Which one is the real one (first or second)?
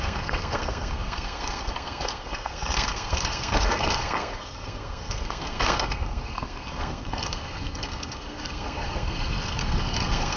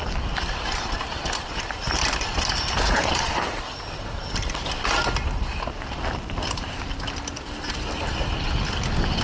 second